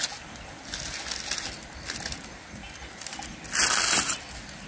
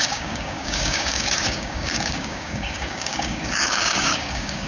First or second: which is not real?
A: second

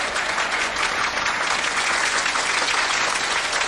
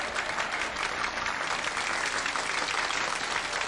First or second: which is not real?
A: first